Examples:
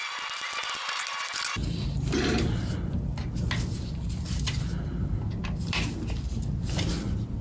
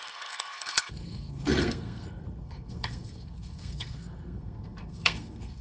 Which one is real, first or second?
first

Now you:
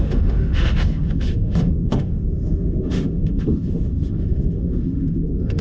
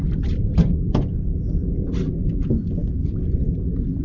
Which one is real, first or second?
second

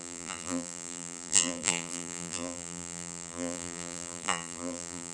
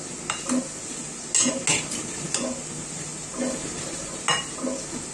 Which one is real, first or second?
second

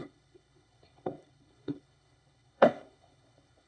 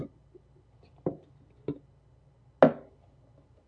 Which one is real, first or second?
second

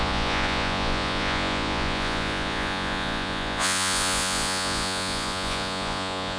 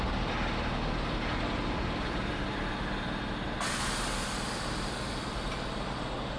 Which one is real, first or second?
second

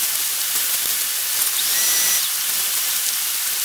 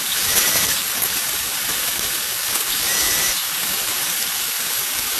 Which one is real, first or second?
first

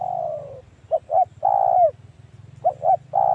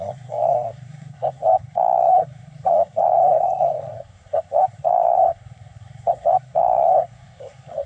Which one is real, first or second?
first